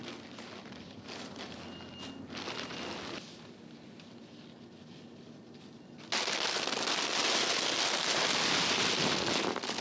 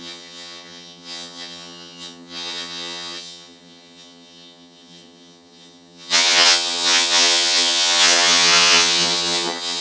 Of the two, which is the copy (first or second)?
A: second